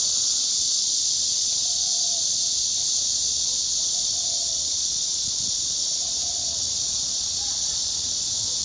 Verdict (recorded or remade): remade